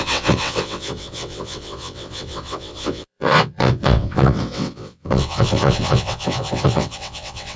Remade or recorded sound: remade